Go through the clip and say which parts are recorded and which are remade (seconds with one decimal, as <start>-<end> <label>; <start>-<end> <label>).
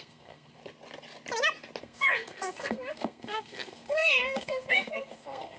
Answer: 0.0-0.6 remade; 0.6-1.8 recorded; 1.8-5.6 remade